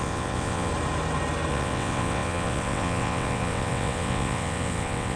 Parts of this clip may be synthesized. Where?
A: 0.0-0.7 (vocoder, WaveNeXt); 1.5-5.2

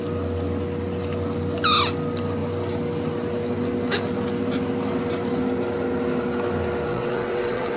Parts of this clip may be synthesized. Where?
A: 6.9-7.8 (vocoder, WaveNeXt)